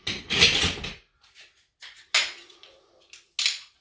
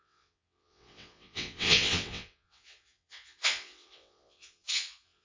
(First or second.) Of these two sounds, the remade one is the second